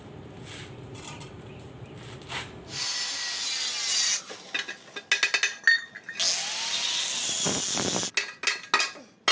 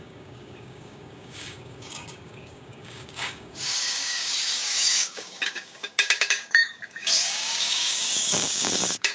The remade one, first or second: second